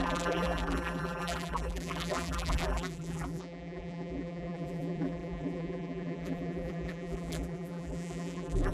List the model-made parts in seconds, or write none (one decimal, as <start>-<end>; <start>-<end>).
0.0-8.7